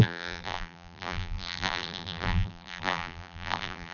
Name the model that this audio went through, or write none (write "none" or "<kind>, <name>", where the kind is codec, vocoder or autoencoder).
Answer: vocoder, BigVGAN v2